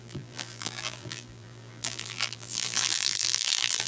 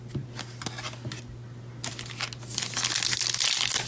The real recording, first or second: second